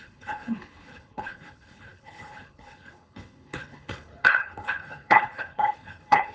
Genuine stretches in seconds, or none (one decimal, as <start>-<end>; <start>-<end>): none